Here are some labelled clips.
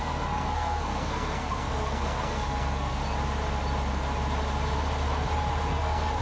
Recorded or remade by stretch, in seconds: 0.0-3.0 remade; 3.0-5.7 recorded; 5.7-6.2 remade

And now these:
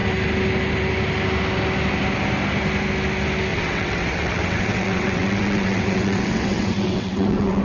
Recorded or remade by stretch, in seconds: 0.0-3.5 recorded; 3.5-7.6 remade

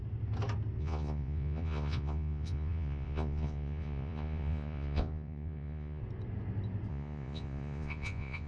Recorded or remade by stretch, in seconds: 0.0-0.8 recorded; 0.8-6.0 remade; 6.0-6.9 recorded; 6.9-8.5 remade

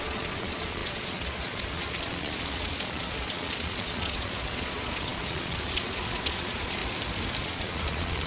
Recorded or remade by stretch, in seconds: 0.0-6.8 remade; 6.8-7.4 recorded; 7.4-8.3 remade

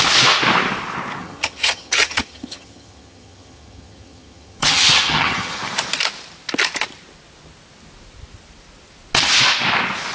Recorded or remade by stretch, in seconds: 0.0-1.2 recorded; 1.2-5.6 remade; 5.6-10.1 recorded

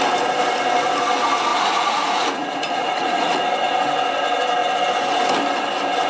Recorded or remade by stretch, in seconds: 0.0-1.5 recorded; 1.5-3.4 remade; 3.4-6.1 recorded

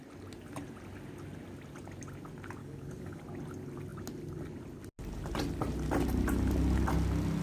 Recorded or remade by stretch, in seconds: 0.0-2.6 recorded; 2.6-3.2 remade; 3.2-7.4 recorded

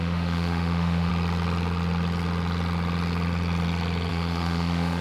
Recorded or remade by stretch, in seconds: 0.0-1.1 remade; 1.1-4.1 recorded; 4.1-5.0 remade